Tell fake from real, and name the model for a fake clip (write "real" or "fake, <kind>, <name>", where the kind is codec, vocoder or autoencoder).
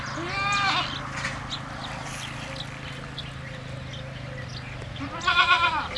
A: real